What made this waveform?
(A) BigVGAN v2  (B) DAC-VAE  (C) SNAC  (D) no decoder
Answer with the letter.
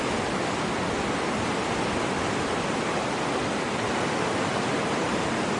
D